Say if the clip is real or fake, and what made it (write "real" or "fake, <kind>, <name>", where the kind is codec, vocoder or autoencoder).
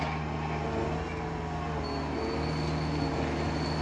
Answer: real